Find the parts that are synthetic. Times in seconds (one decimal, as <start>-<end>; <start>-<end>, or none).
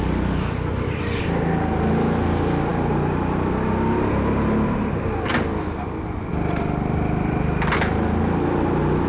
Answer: none